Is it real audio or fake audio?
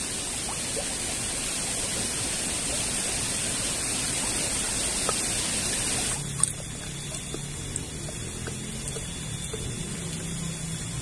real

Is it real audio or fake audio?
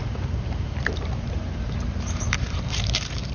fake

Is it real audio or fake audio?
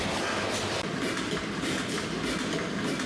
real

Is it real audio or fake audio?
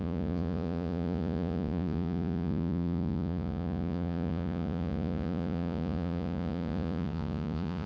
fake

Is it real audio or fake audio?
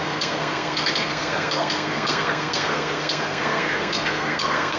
fake